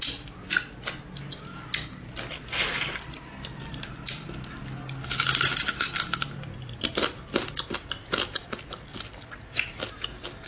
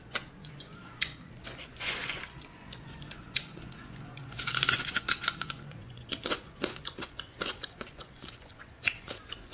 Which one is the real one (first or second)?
first